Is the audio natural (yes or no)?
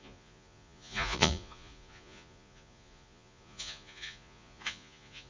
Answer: no